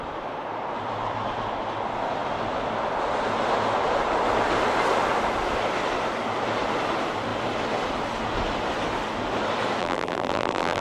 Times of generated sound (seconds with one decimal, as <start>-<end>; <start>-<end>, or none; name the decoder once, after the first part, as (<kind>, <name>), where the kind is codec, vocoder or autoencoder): 9.8-10.8 (vocoder, BigVGAN v2)